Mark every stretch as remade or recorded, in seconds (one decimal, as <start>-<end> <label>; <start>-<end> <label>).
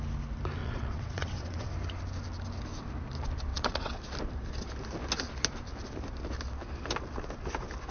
0.0-0.6 recorded; 0.6-1.7 remade; 1.7-3.5 recorded; 3.5-4.0 remade; 4.0-7.9 recorded